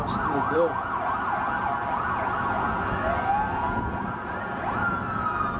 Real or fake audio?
real